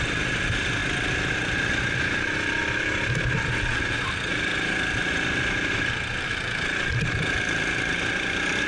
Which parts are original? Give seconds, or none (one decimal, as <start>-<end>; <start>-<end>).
0.0-8.7